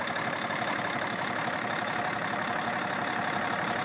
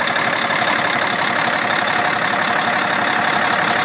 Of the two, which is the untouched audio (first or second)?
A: second